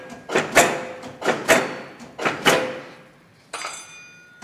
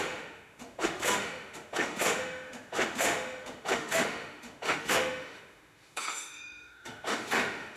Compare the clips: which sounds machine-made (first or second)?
second